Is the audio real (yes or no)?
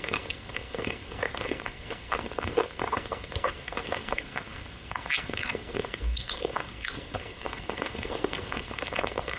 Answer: no